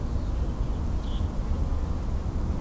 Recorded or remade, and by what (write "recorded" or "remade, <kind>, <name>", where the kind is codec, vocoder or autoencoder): recorded